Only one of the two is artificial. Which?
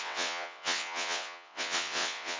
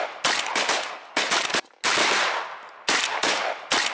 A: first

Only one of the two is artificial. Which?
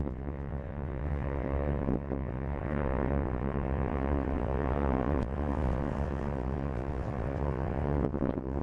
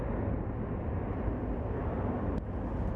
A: first